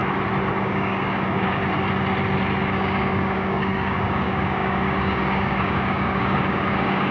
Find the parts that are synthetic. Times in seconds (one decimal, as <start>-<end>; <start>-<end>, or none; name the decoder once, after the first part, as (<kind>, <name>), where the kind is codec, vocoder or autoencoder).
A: 0.6-1.6 (codec, DAC); 2.6-7.1